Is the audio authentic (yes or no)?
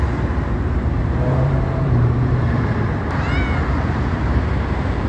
no